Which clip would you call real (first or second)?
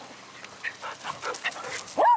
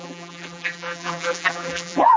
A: first